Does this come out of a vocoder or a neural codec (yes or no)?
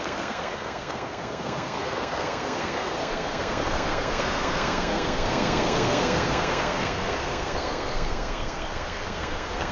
yes